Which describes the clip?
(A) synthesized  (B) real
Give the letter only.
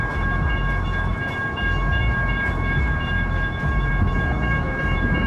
A